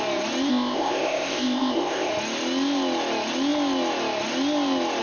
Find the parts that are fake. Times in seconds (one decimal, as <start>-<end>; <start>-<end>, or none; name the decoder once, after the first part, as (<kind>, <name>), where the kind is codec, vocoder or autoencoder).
0.5-2.1 (codec, ZipCodec)